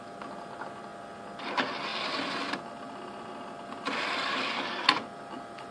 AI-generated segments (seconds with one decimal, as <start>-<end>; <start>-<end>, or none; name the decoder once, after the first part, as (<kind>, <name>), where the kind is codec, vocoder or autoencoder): none